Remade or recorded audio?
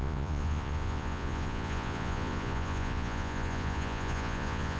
remade